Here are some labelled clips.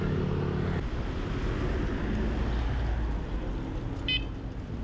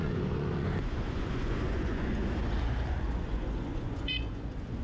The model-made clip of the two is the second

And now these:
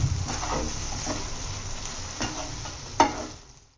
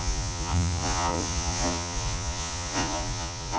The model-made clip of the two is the second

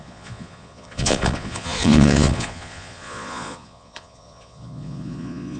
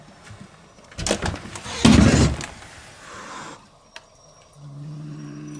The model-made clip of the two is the first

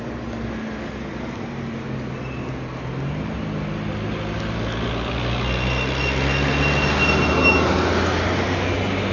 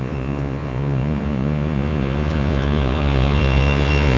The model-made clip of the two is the second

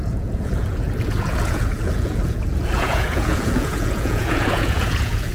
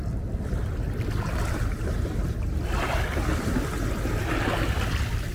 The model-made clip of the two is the first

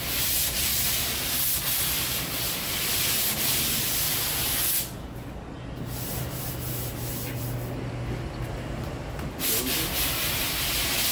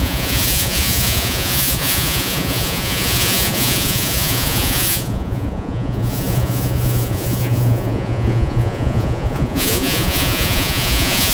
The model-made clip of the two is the second